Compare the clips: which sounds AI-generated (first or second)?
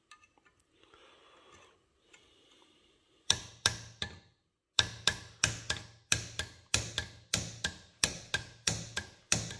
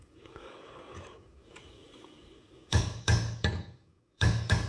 second